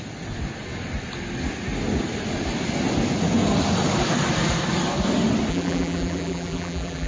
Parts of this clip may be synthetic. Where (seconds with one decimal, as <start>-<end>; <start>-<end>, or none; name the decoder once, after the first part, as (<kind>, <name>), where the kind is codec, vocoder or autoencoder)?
5.5-7.1 (vocoder, BigVGAN v2)